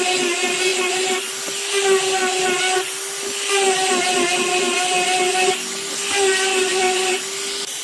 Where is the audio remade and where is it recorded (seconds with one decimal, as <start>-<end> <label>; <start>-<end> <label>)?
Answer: 0.0-6.5 recorded; 6.5-7.2 remade; 7.2-7.8 recorded